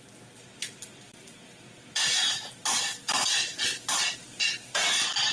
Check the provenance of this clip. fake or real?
real